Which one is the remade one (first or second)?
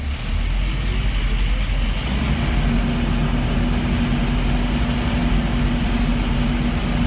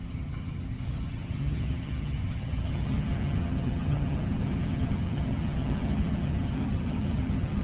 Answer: second